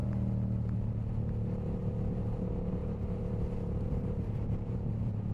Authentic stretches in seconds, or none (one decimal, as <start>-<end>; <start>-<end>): 0.0-2.2